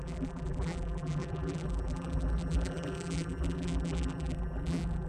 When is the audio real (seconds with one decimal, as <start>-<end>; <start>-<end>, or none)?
none